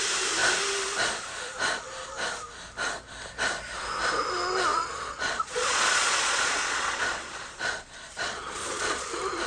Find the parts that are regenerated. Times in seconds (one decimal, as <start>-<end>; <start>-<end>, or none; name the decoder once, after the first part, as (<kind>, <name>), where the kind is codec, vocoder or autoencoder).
4.7-9.1 (vocoder, Vocos)